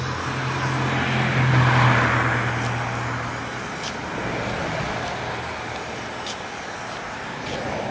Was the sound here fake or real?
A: real